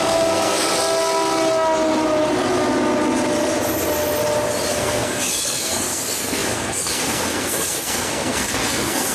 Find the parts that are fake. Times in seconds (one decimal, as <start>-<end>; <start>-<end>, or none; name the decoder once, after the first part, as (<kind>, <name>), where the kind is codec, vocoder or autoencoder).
0.0-0.7 (codec, SNAC); 4.7-9.1